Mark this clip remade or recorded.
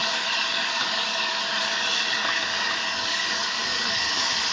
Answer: remade